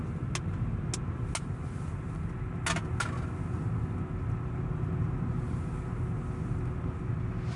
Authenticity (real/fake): real